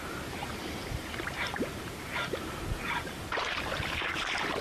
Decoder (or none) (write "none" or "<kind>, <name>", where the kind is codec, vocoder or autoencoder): vocoder, BigVGAN v2